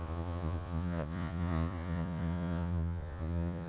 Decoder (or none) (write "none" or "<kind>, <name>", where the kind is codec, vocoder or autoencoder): vocoder, Vocos